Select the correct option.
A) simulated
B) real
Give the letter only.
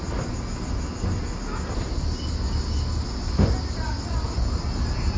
B